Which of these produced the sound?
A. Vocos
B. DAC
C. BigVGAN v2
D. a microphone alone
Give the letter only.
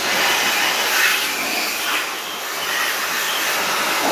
D